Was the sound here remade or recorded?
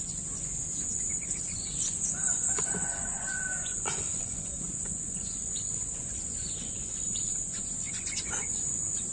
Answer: remade